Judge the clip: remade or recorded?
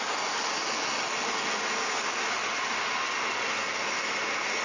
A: recorded